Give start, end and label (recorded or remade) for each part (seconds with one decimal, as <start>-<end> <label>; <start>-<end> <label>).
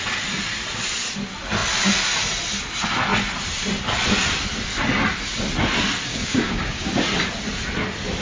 0.0-6.1 recorded; 6.1-6.9 remade; 6.9-8.2 recorded